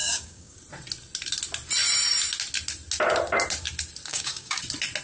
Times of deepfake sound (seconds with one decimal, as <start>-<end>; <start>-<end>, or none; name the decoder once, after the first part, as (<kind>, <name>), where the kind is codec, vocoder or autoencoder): 0.0-0.6 (codec, DAC); 4.1-4.6